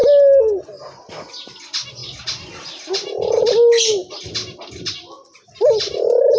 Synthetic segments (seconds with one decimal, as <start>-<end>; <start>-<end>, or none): none